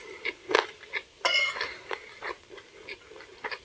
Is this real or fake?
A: real